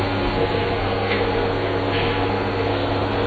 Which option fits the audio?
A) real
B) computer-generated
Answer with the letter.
B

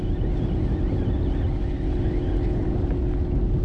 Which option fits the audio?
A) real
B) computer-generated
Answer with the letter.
A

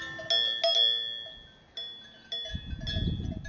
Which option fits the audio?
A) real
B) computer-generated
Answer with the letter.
A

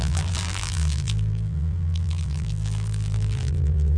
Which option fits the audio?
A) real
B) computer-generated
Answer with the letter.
B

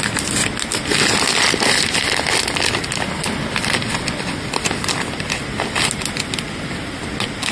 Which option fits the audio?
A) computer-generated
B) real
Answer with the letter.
B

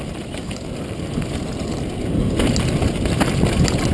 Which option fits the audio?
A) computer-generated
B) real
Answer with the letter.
B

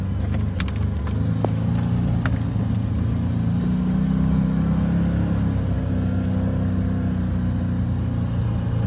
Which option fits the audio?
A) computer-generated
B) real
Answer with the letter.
B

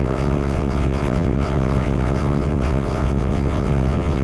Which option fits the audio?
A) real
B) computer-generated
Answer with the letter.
B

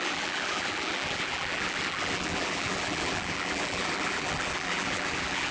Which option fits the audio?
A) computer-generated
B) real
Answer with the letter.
A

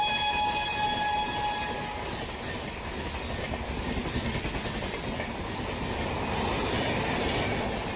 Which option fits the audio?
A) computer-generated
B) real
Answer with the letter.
B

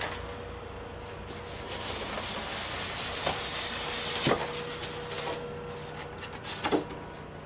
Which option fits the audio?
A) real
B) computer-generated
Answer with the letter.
A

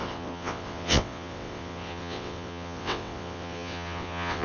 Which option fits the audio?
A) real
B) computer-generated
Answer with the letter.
B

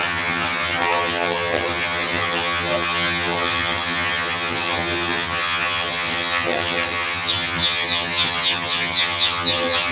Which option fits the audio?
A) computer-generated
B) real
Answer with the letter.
A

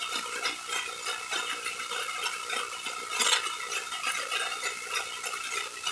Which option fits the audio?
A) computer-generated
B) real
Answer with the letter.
B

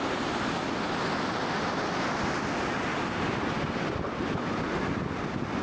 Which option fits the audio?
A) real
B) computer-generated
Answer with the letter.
A